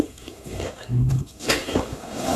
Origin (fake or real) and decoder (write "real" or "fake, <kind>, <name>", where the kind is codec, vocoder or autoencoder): fake, codec, SNAC